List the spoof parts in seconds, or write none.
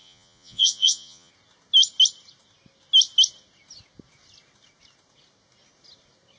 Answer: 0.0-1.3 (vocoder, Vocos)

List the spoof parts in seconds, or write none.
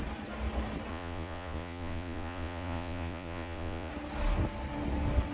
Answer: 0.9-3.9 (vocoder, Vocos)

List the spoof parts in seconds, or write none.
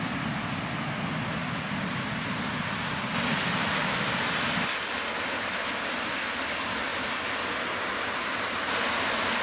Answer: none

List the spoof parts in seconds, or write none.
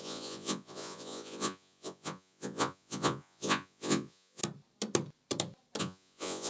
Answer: 0.0-4.4 (vocoder, Vocos); 5.8-6.5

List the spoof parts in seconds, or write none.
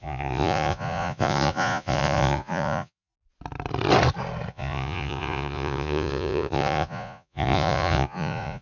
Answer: 0.0-3.1 (vocoder, Vocos); 4.5-8.6